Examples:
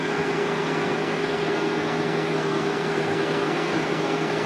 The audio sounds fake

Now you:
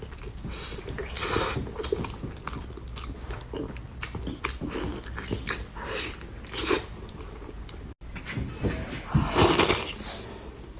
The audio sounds real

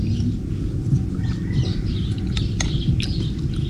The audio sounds real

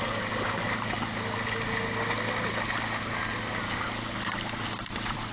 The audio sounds real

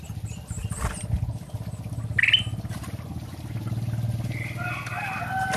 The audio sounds real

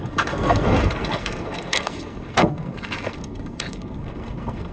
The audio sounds fake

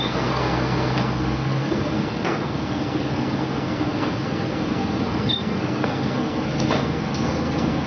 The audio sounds fake